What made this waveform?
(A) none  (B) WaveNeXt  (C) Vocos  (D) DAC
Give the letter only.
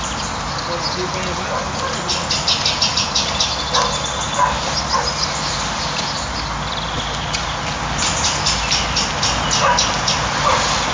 A